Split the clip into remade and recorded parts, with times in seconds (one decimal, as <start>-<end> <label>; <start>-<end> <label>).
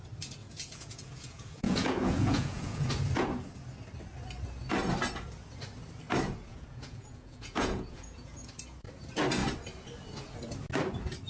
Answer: 0.0-0.4 recorded; 0.4-2.9 remade; 2.9-6.5 recorded; 6.5-8.5 remade; 8.5-11.3 recorded